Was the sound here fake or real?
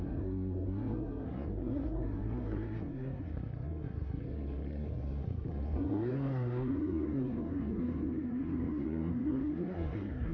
fake